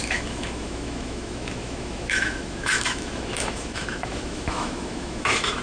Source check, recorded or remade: remade